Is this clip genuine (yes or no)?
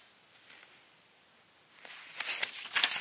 yes